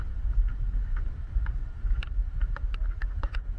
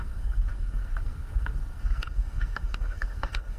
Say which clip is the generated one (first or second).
second